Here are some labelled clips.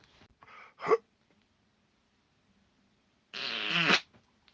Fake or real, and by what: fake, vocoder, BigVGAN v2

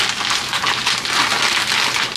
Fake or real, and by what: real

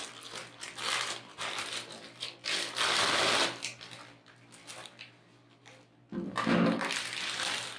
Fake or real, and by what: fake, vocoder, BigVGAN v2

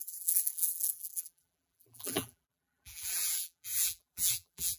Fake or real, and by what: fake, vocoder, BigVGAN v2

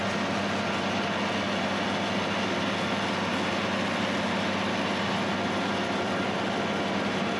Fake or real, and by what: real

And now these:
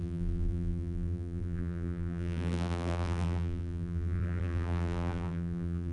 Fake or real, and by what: fake, vocoder, BigVGAN v2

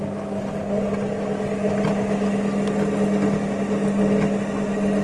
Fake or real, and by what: real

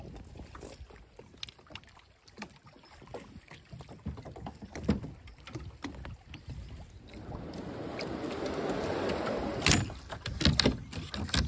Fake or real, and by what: real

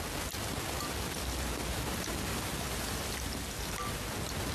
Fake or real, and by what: real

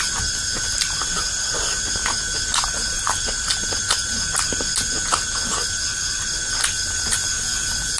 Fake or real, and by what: real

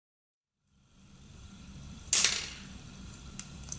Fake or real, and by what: real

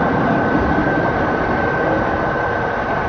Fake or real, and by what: fake, vocoder, BigVGAN v2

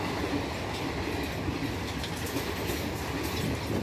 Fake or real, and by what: real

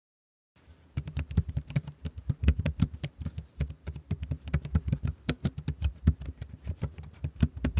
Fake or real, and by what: fake, vocoder, BigVGAN v2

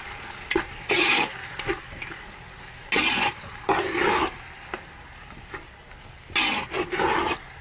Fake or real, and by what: real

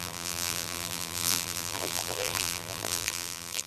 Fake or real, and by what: fake, vocoder, BigVGAN v2